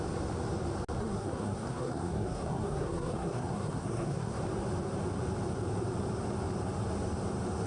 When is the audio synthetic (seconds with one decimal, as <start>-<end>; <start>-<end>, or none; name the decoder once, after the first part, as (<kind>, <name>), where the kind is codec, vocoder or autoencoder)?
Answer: 1.0-4.4 (codec, SNAC)